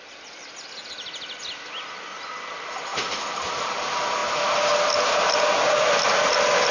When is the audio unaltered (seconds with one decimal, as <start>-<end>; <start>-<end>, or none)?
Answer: 0.0-6.7